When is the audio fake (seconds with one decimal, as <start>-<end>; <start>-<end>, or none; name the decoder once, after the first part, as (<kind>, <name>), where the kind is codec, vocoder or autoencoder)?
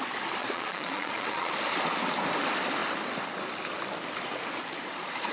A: 0.4-1.5 (vocoder, Vocos)